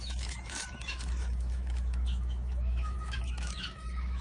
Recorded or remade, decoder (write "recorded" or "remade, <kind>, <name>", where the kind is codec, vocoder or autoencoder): remade, autoencoder, DAC-VAE